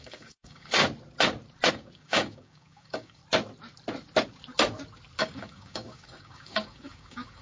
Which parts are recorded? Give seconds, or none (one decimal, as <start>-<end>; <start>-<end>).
0.8-1.7; 3.2-5.2